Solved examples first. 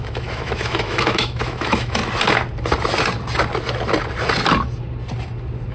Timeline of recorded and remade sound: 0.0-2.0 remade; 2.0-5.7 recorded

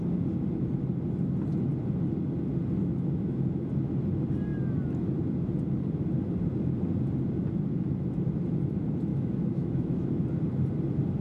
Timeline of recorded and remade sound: 0.0-2.8 recorded; 2.8-3.7 remade; 3.7-9.1 recorded; 9.1-10.2 remade; 10.2-11.2 recorded

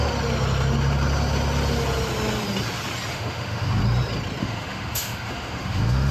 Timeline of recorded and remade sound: 0.0-3.1 recorded; 3.1-3.8 remade; 3.8-4.4 recorded; 4.4-6.1 remade

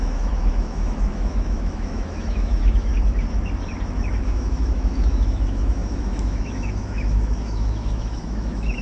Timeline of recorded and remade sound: 0.0-2.9 remade; 2.9-4.2 recorded; 4.2-8.8 remade

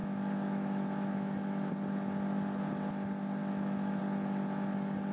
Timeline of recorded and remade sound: 0.0-1.7 remade; 1.7-3.4 recorded; 3.4-4.0 remade; 4.0-5.1 recorded

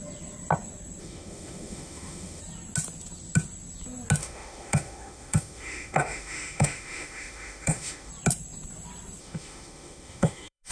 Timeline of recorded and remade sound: 0.0-1.0 recorded; 1.0-2.4 remade; 2.4-4.2 recorded; 4.2-8.1 remade; 8.1-9.2 recorded; 9.2-10.7 remade

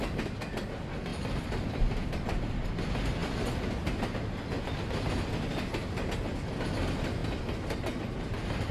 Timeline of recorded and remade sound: 0.0-8.7 recorded